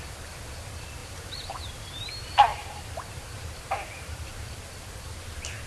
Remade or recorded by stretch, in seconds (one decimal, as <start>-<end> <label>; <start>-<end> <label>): 0.0-1.0 recorded; 1.0-2.1 remade; 2.1-2.5 recorded; 2.5-4.6 remade; 4.6-5.7 recorded